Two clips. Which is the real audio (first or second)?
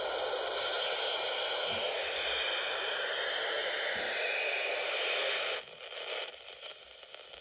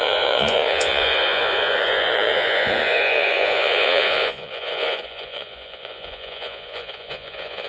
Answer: first